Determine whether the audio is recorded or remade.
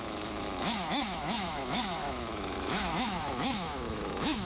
remade